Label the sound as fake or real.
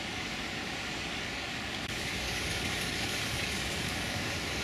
fake